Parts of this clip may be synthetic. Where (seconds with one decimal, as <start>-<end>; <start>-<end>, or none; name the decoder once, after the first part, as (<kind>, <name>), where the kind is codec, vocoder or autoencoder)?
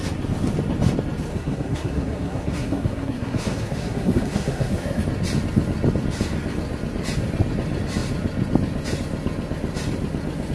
1.3-5.0 (codec, SNAC)